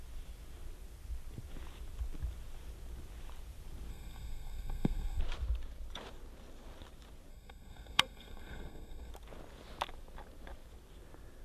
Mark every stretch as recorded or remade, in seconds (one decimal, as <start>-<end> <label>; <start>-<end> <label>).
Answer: 0.0-3.9 recorded; 3.9-5.2 remade; 5.2-7.3 recorded; 7.3-9.1 remade; 9.1-11.4 recorded